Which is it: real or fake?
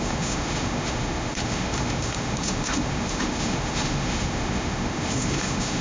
fake